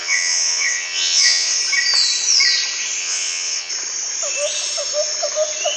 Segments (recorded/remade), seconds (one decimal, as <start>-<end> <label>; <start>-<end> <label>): 0.0-1.6 remade; 1.6-3.0 recorded; 3.0-3.7 remade; 3.7-5.8 recorded